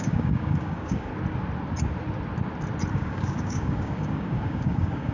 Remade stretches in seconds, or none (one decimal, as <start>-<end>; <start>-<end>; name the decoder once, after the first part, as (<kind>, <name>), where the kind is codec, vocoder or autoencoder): 0.0-1.1 (codec, DAC); 2.9-5.1